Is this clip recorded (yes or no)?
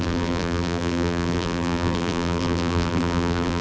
no